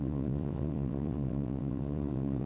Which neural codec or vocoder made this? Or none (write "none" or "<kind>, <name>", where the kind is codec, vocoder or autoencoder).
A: vocoder, WaveNeXt